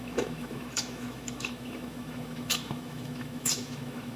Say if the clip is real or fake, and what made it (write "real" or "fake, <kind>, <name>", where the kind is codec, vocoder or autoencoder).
fake, autoencoder, DAC-VAE